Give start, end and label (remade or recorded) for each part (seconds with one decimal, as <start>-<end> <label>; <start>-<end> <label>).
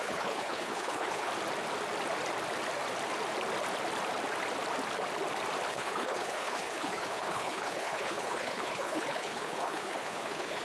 0.0-1.3 remade; 1.3-5.7 recorded; 5.7-10.6 remade